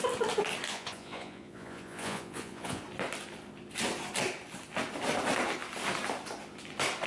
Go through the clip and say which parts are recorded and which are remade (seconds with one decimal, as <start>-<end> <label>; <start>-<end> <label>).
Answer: 0.0-0.7 recorded; 0.7-2.8 remade; 2.8-7.1 recorded